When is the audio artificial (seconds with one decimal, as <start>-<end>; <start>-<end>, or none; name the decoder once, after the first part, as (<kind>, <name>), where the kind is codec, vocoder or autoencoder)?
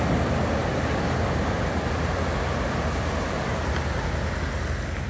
none